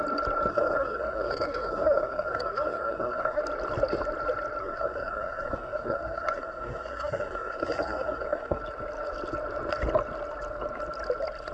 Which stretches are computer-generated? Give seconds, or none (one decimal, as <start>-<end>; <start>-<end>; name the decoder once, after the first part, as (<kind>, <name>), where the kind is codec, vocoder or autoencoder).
0.5-3.4 (codec, SNAC); 4.6-8.6